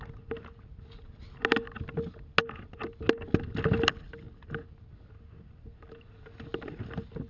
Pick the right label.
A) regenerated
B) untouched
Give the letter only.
B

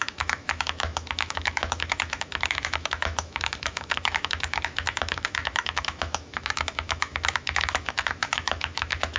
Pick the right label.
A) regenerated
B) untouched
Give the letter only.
A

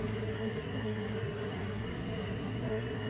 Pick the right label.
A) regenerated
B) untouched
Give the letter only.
A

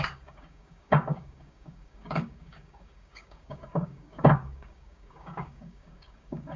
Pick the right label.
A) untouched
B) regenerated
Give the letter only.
B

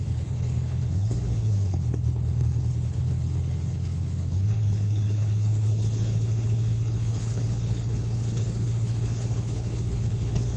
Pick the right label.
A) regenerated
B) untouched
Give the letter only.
A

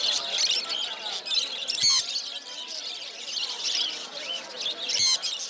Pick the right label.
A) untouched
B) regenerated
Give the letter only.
A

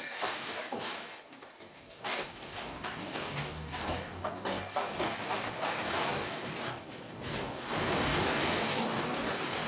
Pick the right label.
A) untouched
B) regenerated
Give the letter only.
B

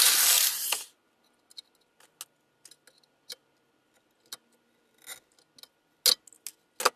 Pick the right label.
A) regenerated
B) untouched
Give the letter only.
B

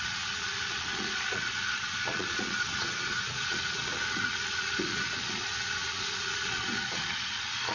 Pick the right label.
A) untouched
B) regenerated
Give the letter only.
B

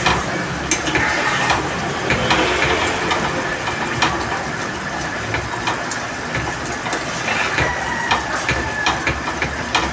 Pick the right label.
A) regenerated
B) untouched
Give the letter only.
B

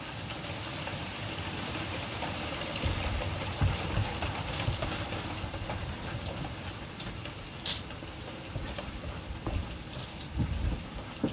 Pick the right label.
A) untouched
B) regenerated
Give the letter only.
A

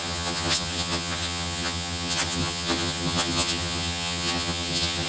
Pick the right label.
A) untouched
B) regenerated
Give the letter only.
B